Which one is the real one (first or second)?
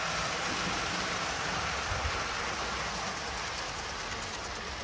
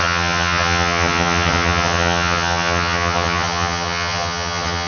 first